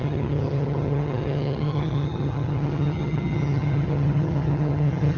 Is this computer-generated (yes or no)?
yes